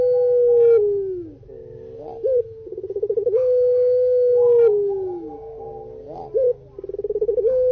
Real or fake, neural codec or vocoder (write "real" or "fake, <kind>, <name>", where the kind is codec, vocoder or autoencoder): real